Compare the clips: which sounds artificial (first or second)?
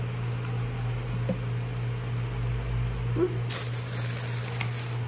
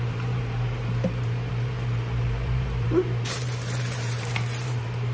second